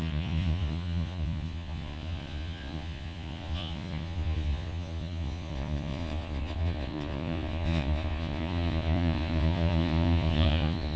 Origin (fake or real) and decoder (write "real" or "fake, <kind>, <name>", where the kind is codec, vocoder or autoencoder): fake, vocoder, Vocos